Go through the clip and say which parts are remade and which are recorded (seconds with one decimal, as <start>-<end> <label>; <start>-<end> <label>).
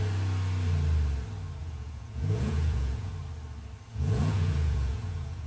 0.0-1.6 recorded; 1.6-3.1 remade; 3.1-3.9 recorded; 3.9-5.5 remade